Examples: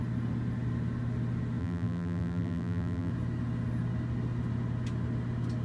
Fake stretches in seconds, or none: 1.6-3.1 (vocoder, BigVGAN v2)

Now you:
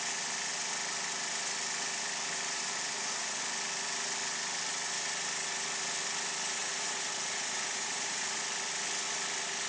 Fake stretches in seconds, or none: 2.7-3.4 (vocoder, Vocos); 6.6-8.4

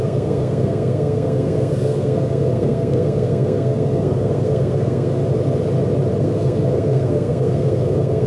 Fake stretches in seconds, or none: 0.0-5.2 (codec, SNAC); 6.2-8.3

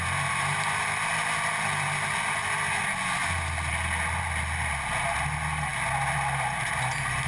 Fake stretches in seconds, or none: none

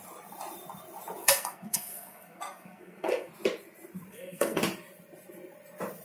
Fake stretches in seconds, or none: 1.2-3.3 (codec, SNAC); 4.1-4.6

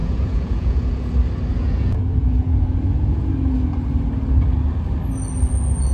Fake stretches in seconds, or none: 0.0-1.1 (vocoder, Vocos); 1.5-3.3

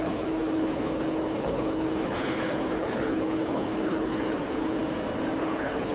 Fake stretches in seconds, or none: 0.0-4.8 (codec, HILCodec); 5.4-5.9